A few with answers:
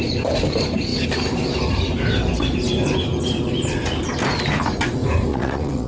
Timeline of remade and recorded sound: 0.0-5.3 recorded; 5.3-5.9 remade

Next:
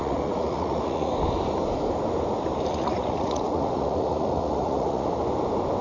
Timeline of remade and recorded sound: 0.0-1.1 remade; 1.1-2.7 recorded; 2.7-5.2 remade; 5.2-5.8 recorded

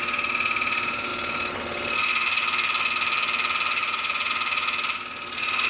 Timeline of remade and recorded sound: 0.0-3.8 recorded; 3.8-4.3 remade; 4.3-5.7 recorded

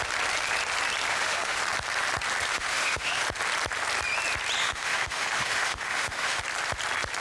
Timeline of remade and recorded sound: 0.0-1.1 recorded; 1.1-1.6 remade; 1.6-2.5 recorded; 2.5-3.2 remade; 3.2-4.6 recorded; 4.6-6.4 remade; 6.4-7.2 recorded

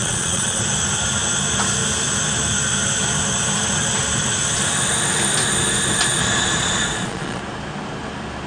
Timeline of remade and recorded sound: 0.0-0.6 remade; 0.6-6.2 recorded; 6.2-7.4 remade; 7.4-8.5 recorded